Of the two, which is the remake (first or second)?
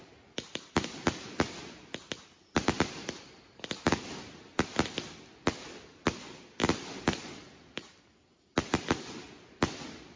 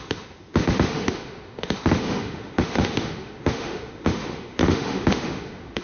second